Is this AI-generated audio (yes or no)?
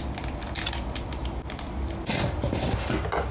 no